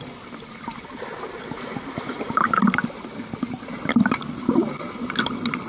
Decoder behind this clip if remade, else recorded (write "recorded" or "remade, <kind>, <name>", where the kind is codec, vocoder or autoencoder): recorded